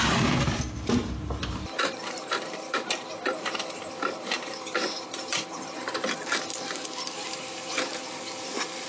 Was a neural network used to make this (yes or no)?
yes